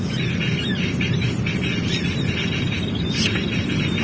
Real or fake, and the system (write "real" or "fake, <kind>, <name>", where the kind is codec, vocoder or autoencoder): real